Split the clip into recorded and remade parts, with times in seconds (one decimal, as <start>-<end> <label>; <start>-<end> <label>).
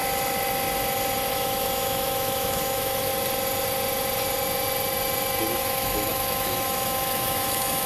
0.0-1.3 recorded; 1.3-3.1 remade; 3.1-5.6 recorded; 5.6-7.9 remade